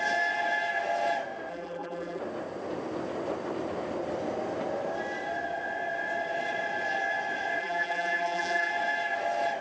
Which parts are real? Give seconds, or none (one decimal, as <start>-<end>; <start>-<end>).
0.0-1.5; 2.2-7.6; 8.7-9.6

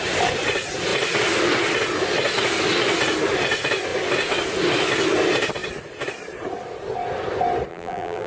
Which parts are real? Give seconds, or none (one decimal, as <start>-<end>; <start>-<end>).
0.0-7.7

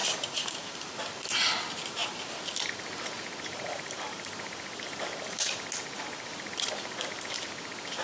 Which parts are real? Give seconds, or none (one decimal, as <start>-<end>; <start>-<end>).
0.9-8.0